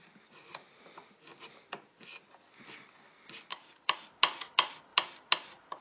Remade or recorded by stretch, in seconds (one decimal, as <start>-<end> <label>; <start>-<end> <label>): 0.0-3.5 recorded; 3.5-4.0 remade; 4.0-5.8 recorded